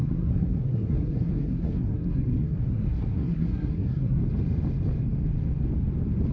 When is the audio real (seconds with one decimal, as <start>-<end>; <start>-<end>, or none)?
4.2-6.3